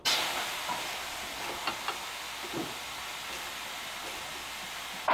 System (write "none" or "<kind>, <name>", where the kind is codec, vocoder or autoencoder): none